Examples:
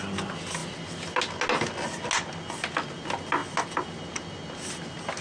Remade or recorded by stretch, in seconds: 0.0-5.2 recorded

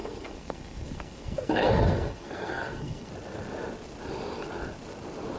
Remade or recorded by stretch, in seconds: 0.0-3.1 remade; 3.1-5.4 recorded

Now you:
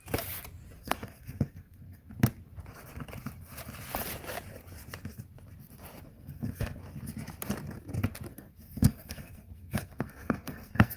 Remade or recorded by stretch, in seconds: 0.0-0.8 recorded; 0.8-2.1 remade; 2.1-6.1 recorded; 6.1-6.8 remade; 6.8-8.3 recorded; 8.3-11.0 remade

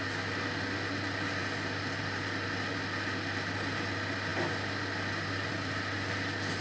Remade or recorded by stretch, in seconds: 0.0-6.6 recorded

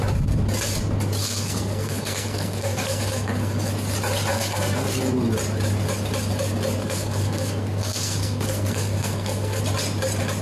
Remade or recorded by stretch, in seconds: 0.0-1.2 recorded; 1.2-3.7 remade; 3.7-4.3 recorded; 4.3-5.0 remade; 5.0-6.8 recorded; 6.8-9.6 remade; 9.6-10.4 recorded

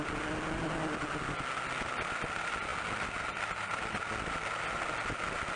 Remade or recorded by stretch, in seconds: 0.0-5.6 recorded